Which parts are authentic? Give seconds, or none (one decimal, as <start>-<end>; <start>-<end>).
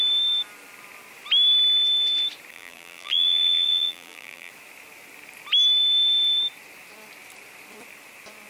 0.0-2.5; 4.5-8.5